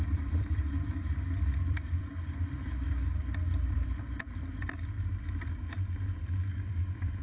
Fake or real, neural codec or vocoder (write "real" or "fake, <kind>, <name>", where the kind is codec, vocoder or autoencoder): fake, vocoder, BigVGAN v2